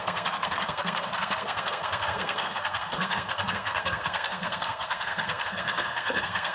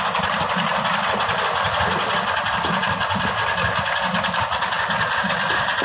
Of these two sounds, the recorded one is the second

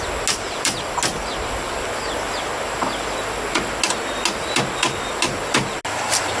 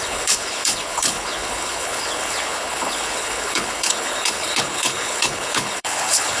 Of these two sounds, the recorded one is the first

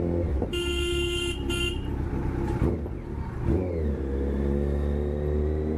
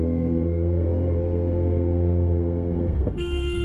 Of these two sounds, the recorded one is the first